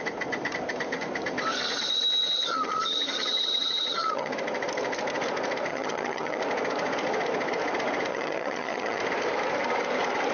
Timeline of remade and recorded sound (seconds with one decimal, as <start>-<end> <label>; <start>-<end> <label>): 0.0-2.5 recorded; 2.5-4.3 remade; 4.3-5.7 recorded; 5.7-6.4 remade; 6.4-8.1 recorded; 8.1-9.0 remade; 9.0-10.3 recorded